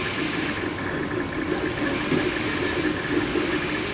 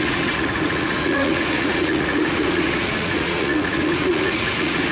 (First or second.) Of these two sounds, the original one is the first